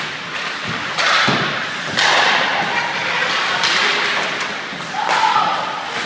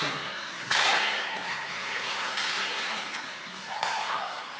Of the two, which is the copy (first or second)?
second